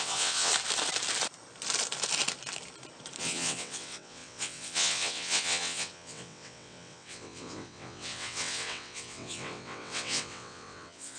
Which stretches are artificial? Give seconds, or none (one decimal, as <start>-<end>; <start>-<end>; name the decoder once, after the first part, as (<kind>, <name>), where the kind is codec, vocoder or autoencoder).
0.0-0.5 (vocoder, WaveNeXt); 3.2-11.2